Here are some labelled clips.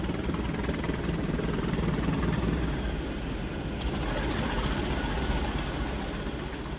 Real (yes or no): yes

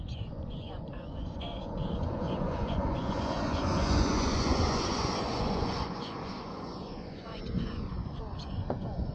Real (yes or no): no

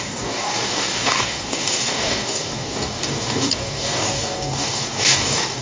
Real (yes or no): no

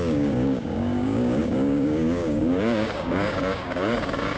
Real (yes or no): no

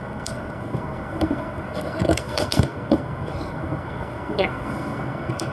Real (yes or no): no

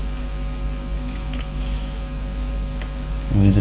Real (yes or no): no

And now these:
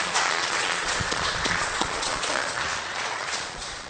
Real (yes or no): no